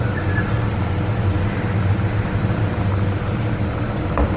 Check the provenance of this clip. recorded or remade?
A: recorded